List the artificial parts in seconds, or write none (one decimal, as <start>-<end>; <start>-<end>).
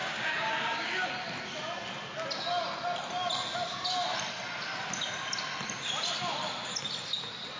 0.0-1.1